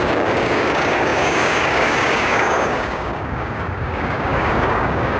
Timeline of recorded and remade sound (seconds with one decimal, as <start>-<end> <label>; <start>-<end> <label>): 0.0-5.2 remade